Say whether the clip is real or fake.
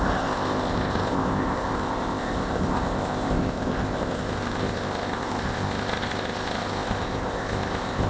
fake